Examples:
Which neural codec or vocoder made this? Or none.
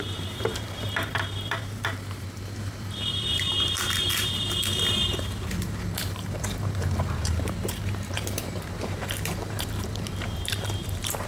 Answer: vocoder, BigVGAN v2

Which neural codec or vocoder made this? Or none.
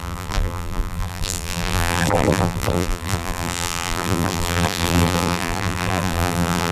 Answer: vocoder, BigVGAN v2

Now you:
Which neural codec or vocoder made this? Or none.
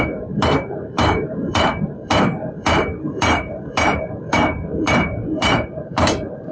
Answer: vocoder, BigVGAN v2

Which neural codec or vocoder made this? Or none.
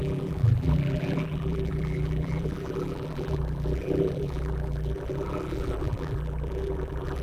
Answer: vocoder, BigVGAN v2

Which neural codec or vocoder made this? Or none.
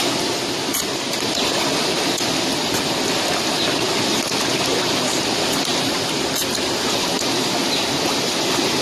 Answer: none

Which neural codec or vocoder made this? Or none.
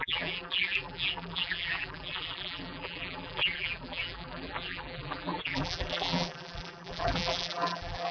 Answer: vocoder, BigVGAN v2